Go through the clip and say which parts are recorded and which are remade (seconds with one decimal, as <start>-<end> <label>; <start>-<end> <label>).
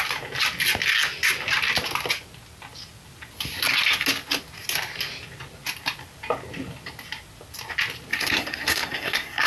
0.0-8.1 recorded; 8.1-9.5 remade